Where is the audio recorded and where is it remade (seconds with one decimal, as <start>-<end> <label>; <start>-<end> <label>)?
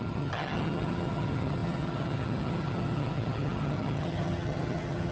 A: 0.0-5.1 remade